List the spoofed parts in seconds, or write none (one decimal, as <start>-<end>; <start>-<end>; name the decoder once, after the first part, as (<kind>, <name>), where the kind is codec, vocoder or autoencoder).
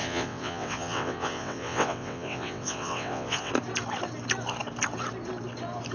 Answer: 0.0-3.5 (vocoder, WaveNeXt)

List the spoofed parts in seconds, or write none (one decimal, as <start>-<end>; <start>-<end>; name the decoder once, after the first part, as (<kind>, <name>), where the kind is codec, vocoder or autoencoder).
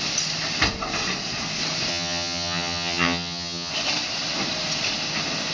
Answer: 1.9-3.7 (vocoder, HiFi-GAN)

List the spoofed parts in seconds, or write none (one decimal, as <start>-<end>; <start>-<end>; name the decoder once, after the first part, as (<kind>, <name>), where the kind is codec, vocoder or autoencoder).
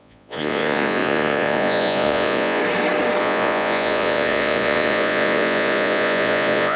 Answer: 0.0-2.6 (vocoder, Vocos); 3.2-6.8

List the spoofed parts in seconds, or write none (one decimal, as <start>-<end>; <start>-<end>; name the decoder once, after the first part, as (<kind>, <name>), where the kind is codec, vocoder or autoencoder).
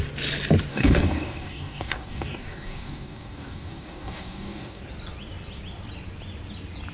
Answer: 0.7-4.8 (codec, DAC)